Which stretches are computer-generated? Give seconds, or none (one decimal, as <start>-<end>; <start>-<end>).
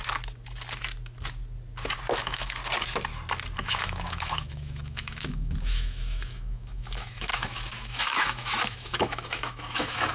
2.2-2.6; 3.6-10.1